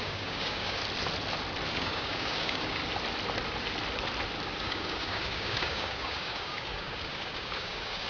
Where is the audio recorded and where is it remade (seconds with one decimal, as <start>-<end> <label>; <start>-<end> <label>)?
0.0-0.8 remade; 0.8-1.7 recorded; 1.7-2.8 remade; 2.8-4.6 recorded; 4.6-8.1 remade